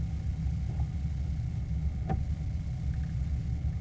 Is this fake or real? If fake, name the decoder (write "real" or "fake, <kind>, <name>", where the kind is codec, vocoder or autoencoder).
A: real